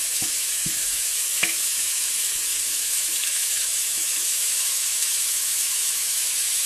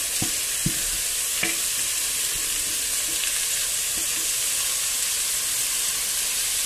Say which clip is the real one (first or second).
second